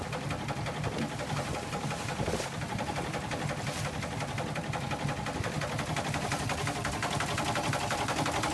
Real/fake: real